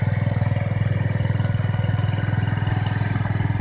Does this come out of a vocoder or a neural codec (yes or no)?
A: no